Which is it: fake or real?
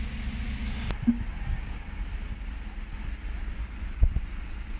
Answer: real